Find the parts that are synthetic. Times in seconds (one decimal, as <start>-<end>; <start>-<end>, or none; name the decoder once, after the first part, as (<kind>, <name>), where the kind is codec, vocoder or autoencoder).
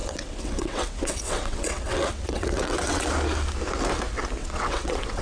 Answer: 0.0-3.1 (vocoder, WaveNeXt); 4.4-5.2